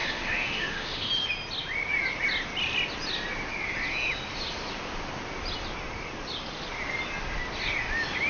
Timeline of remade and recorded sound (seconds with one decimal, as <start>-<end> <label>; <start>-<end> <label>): 0.0-1.1 remade; 1.1-8.3 recorded